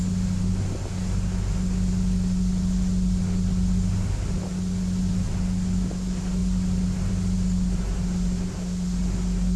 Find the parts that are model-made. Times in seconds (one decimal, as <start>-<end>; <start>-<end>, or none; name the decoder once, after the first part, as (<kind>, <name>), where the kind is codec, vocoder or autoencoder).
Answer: none